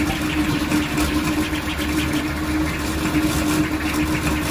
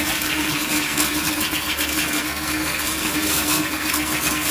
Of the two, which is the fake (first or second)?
second